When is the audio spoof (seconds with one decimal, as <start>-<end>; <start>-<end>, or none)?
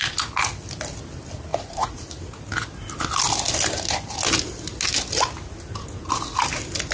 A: 1.5-2.4